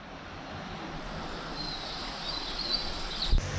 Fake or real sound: real